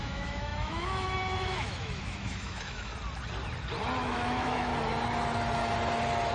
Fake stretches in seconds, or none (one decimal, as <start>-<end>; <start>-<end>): 0.0-2.9; 4.0-4.7